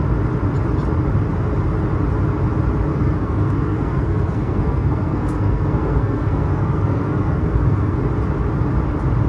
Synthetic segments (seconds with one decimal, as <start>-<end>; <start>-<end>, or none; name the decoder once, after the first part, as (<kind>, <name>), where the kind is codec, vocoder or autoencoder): 2.9-8.0 (codec, SNAC)